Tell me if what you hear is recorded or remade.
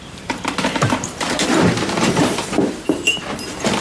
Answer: remade